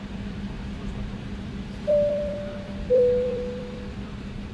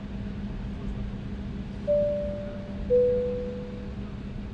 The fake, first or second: first